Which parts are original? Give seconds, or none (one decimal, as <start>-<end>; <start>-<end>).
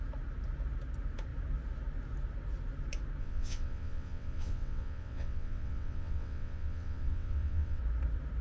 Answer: 0.0-3.2; 7.8-8.4